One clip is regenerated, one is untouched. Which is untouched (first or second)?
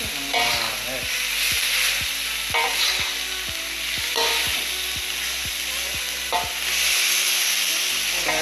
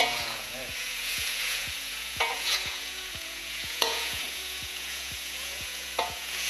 first